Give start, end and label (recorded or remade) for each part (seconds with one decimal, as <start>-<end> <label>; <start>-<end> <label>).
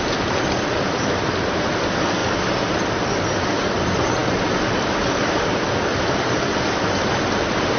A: 0.0-7.8 recorded